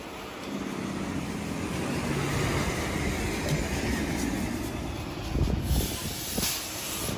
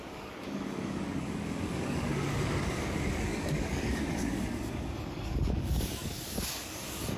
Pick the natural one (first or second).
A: first